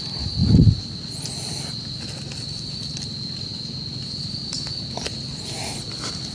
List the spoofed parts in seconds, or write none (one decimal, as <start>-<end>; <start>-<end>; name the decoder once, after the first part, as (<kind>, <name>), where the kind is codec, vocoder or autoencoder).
none